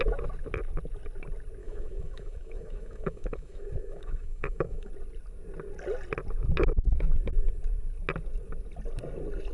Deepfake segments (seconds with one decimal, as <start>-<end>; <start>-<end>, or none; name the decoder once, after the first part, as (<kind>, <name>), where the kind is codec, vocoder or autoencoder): 1.6-4.9 (autoencoder, DAC-VAE)